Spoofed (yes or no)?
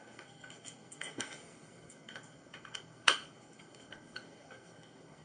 yes